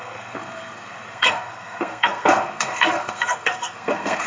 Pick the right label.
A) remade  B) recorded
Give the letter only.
A